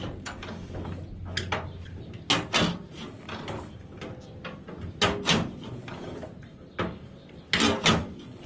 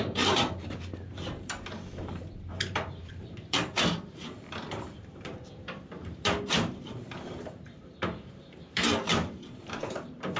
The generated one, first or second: second